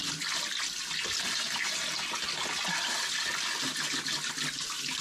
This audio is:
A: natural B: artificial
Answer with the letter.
A